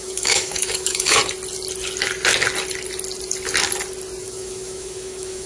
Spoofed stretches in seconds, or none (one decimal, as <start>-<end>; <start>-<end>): 0.0-1.2; 4.2-5.5